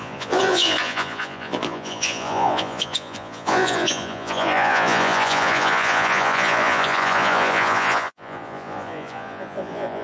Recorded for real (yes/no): no